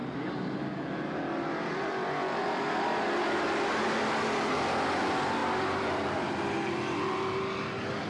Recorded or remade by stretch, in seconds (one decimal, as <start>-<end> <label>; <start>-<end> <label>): 0.0-8.1 recorded